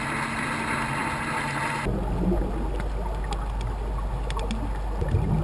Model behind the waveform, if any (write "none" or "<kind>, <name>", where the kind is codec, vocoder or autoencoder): none